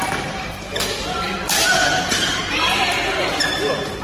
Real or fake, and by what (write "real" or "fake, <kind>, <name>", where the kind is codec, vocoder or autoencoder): fake, vocoder, BigVGAN v2